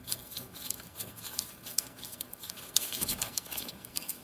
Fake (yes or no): yes